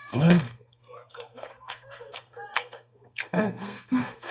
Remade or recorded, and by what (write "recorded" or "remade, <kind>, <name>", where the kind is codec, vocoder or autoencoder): remade, codec, SNAC